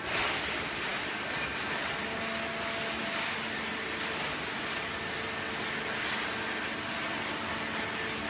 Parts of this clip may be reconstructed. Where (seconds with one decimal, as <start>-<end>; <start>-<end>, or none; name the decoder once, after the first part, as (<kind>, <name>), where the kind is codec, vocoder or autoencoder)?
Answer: none